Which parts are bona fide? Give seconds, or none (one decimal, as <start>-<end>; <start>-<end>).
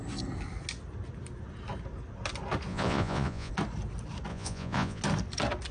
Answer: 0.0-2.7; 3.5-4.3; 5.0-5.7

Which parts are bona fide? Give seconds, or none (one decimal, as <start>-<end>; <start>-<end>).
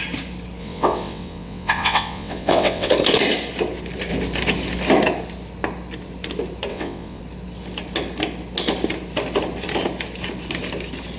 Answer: 0.0-0.6; 2.9-6.7; 7.2-11.2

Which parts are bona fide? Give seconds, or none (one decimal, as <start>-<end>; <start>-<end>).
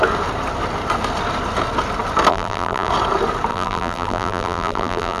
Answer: 0.0-2.3; 2.9-3.5